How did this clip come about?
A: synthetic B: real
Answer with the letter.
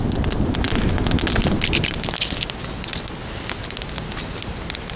B